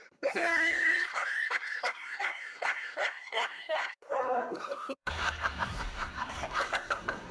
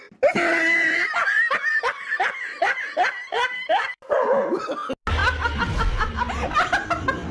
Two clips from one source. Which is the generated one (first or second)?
first